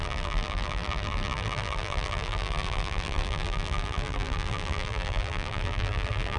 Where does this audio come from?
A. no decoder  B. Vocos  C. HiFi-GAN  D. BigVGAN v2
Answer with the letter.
D